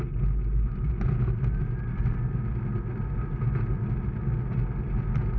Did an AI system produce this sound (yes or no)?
no